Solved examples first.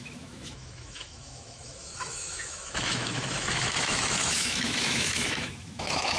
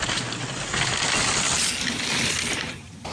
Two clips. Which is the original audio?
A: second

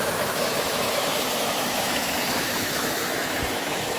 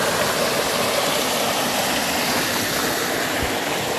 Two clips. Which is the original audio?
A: second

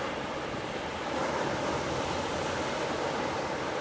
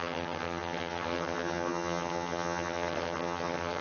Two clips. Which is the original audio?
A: first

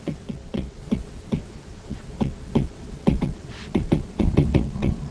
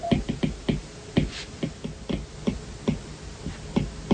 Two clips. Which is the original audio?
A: second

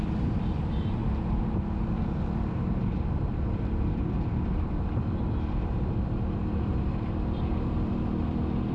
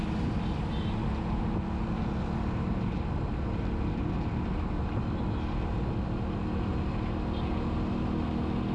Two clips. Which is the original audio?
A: second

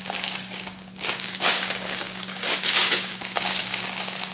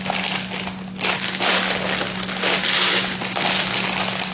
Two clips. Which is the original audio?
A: second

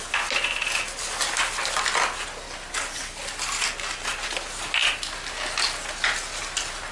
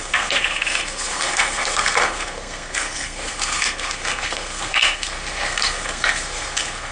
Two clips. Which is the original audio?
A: first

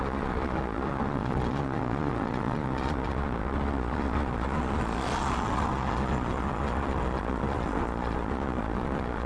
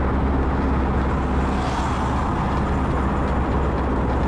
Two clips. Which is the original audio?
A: second